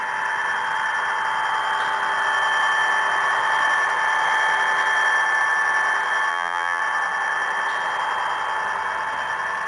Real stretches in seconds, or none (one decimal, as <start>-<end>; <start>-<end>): 0.0-6.3; 6.8-9.7